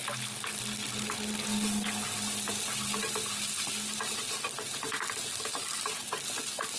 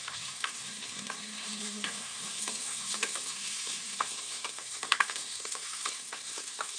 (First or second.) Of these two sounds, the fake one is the second